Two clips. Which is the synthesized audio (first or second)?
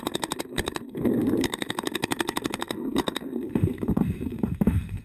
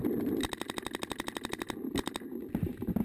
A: first